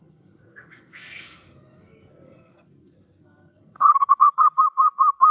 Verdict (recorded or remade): remade